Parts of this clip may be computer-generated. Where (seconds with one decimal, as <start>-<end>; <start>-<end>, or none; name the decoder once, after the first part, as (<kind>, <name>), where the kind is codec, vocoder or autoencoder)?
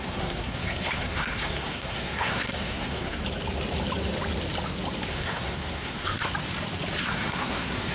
0.0-3.2 (codec, SNAC); 5.1-6.3; 7.0-7.9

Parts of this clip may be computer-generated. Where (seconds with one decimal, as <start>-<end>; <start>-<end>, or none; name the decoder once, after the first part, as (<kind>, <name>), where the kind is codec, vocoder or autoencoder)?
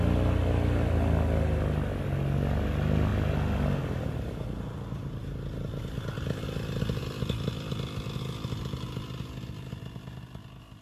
none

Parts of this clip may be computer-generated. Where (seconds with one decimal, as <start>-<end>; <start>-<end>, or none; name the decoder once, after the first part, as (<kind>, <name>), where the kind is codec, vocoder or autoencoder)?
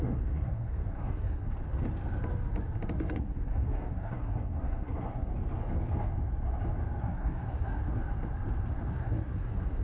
0.0-1.4 (codec, SNAC); 3.0-5.3; 7.0-7.8; 8.9-9.8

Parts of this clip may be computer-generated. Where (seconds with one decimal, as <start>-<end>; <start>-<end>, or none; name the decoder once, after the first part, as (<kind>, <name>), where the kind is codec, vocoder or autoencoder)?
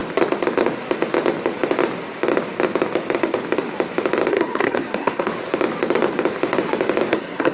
4.3-5.3 (codec, SNAC); 7.1-7.5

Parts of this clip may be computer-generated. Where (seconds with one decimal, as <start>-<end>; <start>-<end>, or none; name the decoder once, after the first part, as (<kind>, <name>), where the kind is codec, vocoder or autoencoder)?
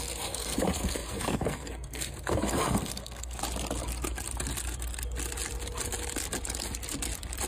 0.0-3.4 (codec, SNAC)